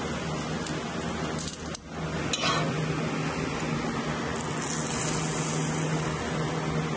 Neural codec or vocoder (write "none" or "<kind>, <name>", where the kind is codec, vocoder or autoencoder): none